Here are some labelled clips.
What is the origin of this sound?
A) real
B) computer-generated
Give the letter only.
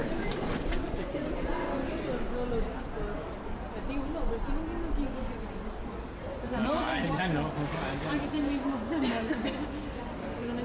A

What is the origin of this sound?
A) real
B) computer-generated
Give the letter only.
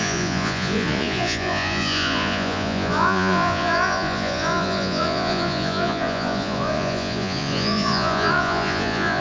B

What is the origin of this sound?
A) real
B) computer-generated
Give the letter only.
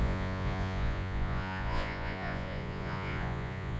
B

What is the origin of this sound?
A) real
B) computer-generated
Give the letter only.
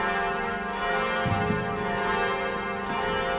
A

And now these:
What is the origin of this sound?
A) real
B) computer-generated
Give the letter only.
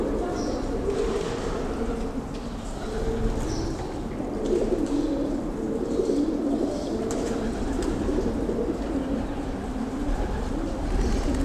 A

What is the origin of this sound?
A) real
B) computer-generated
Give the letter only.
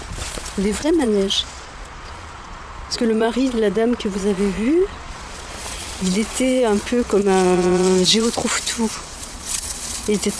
B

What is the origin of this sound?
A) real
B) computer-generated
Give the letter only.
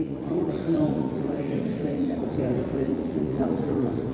B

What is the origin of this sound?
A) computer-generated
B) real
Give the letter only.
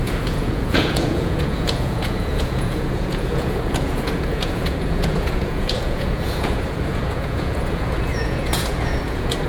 A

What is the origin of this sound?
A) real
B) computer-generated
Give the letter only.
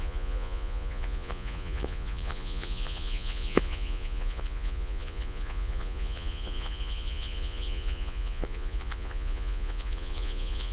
B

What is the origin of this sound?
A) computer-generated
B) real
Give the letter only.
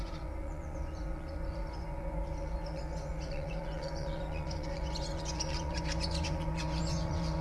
A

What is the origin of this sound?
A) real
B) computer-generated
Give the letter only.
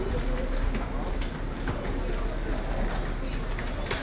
A